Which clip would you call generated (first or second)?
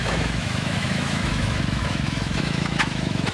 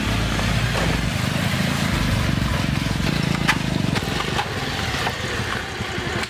first